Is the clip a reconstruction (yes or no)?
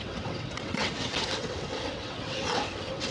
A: yes